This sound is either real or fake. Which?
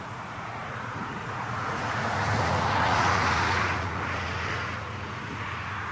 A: fake